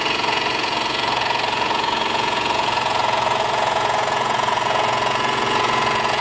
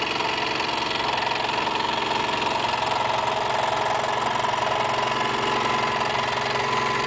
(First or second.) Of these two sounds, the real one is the second